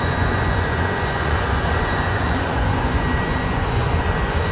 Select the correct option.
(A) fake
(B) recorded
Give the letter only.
A